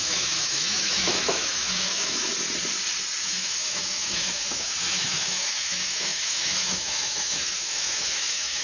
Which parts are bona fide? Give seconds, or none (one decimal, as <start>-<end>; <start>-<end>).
2.3-3.2